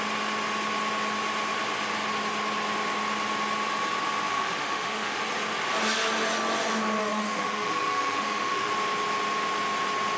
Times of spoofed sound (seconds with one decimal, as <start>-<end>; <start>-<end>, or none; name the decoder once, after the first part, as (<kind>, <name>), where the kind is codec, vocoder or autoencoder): 4.3-5.2 (autoencoder, DAC-VAE); 7.0-8.7